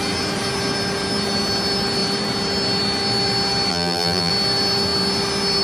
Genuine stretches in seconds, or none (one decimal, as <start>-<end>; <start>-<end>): 0.0-3.7; 4.3-5.6